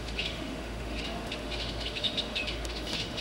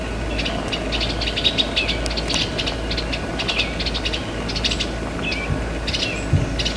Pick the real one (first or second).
second